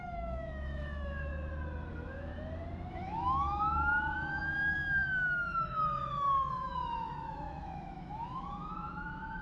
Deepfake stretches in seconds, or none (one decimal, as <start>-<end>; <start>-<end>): 0.0-1.3; 1.9-2.3; 2.9-9.4